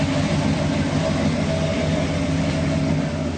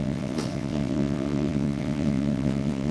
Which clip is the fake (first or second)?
second